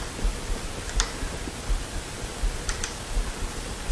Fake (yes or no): no